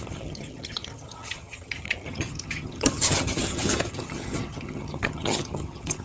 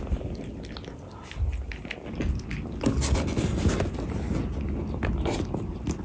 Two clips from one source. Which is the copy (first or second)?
first